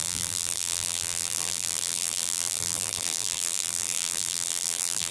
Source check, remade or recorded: remade